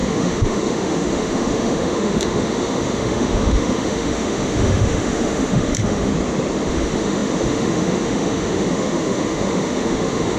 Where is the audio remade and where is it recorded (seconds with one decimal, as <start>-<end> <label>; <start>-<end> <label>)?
0.0-6.1 remade; 6.1-6.7 recorded; 6.7-10.4 remade

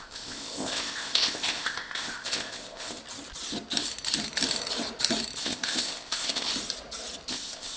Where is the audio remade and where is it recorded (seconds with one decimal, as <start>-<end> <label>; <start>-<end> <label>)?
0.0-3.0 remade; 3.0-5.4 recorded; 5.4-6.5 remade; 6.5-7.3 recorded; 7.3-7.8 remade

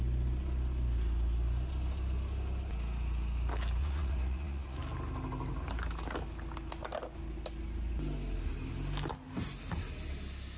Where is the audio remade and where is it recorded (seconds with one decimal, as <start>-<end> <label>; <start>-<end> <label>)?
0.0-3.8 recorded; 3.8-4.8 remade; 4.8-10.6 recorded

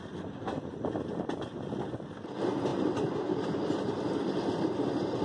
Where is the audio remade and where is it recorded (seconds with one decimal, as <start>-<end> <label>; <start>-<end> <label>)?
0.0-5.2 recorded